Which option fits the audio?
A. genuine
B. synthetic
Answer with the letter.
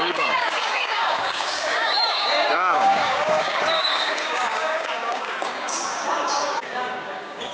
B